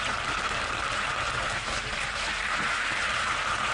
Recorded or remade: recorded